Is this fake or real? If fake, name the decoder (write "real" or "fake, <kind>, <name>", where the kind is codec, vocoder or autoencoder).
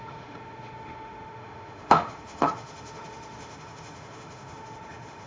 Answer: fake, autoencoder, DAC-VAE